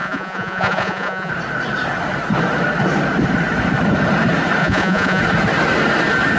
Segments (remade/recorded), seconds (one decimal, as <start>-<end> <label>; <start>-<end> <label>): 0.0-1.3 remade; 1.3-4.6 recorded; 4.6-5.2 remade; 5.2-6.4 recorded